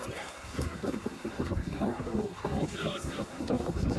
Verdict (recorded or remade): remade